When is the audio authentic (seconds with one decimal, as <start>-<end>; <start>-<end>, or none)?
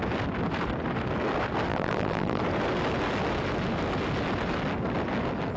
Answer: 0.0-1.7; 2.4-5.6